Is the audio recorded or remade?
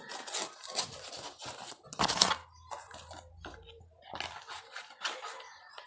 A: recorded